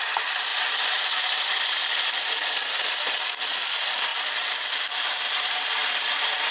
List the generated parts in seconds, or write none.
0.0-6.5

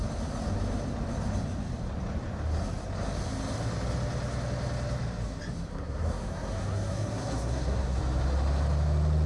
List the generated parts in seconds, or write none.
5.7-8.0

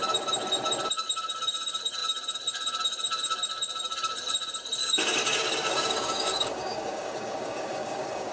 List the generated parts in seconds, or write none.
4.8-8.3

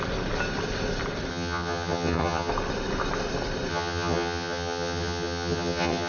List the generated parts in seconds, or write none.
1.3-2.5; 3.7-6.1

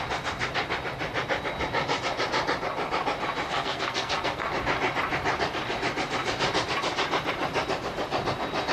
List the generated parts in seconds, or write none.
3.5-4.5

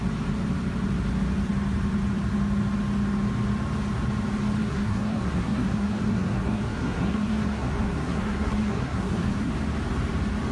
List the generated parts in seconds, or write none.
4.6-9.5

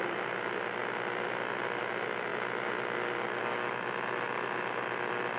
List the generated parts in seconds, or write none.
none

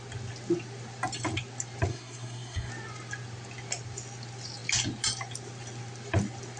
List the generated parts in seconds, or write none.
1.9-2.7